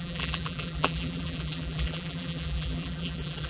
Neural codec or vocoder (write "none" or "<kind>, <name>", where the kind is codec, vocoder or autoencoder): vocoder, BigVGAN v2